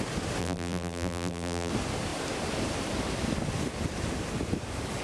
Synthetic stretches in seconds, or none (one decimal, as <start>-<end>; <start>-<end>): 0.4-1.7